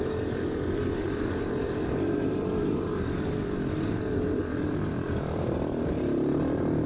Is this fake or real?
fake